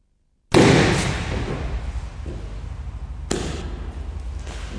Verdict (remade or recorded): recorded